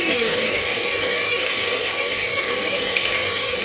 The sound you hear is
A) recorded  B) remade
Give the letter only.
B